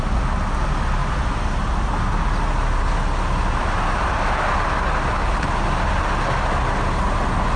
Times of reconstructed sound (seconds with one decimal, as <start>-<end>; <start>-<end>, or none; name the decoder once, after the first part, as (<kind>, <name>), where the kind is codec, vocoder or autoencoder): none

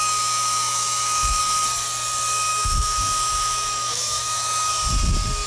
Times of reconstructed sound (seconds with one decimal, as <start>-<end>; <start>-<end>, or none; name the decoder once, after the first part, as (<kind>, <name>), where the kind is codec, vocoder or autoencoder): 0.0-1.4 (autoencoder, DAC-VAE); 2.5-4.7

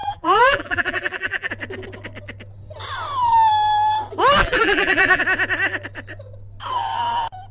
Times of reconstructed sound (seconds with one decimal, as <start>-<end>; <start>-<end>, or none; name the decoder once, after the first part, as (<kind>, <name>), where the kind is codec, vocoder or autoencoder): 0.0-1.5 (vocoder, BigVGAN v2); 4.4-5.2